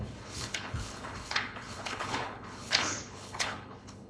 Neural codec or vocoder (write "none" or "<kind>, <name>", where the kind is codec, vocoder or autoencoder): codec, HILCodec